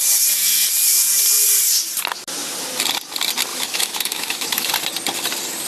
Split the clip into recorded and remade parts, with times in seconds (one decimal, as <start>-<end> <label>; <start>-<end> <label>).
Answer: 0.0-3.5 recorded; 3.5-4.7 remade; 4.7-5.7 recorded